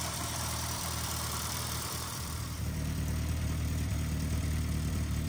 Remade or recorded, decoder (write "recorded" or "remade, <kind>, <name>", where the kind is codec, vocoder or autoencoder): remade, vocoder, BigVGAN v2